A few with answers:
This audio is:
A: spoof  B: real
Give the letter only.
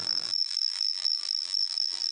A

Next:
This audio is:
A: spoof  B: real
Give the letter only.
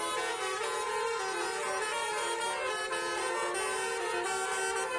B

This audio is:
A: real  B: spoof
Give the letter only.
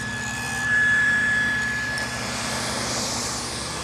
B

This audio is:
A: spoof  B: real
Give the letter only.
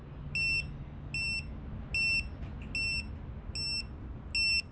B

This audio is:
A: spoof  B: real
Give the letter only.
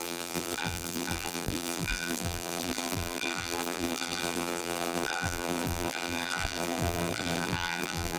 A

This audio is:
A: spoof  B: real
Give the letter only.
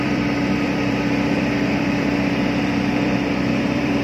A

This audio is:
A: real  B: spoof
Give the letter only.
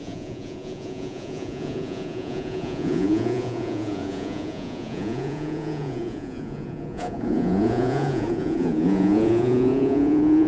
B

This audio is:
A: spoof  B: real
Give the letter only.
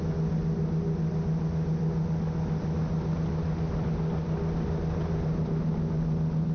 B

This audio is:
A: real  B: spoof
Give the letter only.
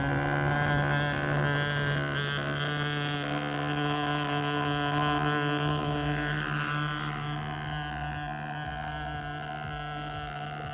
A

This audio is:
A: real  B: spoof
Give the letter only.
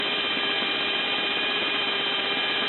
B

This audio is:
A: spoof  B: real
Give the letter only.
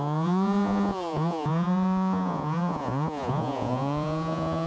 A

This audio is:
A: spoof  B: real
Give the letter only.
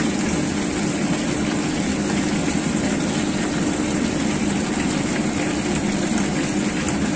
B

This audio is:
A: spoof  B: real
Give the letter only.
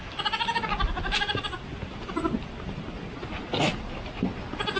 B